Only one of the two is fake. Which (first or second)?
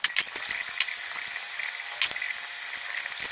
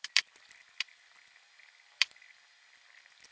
second